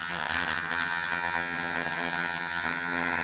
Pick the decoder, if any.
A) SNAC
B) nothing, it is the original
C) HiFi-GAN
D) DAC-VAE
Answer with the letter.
C